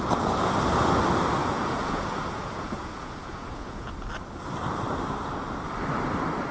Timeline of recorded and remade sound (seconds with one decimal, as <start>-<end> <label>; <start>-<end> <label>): 0.0-1.4 recorded; 1.4-3.9 remade; 3.9-6.5 recorded